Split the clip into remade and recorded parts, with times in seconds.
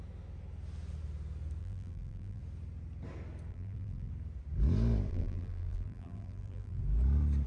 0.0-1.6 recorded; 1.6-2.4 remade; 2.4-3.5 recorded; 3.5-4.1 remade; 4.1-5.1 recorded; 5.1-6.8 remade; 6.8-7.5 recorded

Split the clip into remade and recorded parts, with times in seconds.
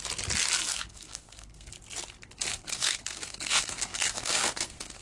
0.0-0.7 recorded; 0.7-1.7 remade; 1.7-2.5 recorded; 2.5-5.0 remade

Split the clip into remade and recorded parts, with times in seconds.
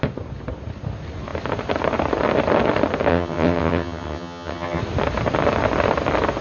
0.0-3.1 recorded; 3.1-4.8 remade; 4.8-6.4 recorded